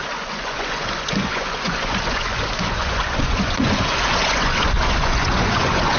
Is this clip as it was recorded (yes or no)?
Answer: no